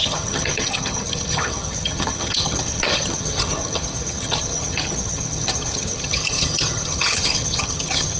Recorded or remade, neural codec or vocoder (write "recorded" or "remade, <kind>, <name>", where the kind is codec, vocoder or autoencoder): remade, vocoder, HiFi-GAN